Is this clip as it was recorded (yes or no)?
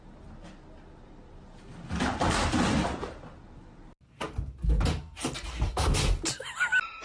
yes